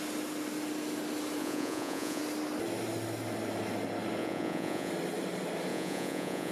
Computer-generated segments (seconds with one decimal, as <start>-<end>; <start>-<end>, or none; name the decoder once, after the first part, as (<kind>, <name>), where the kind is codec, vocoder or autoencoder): 1.4-2.2 (vocoder, Vocos); 4.2-4.9; 5.7-6.5